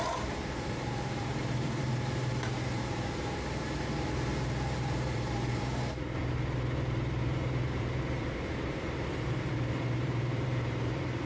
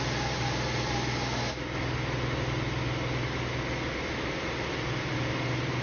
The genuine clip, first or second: second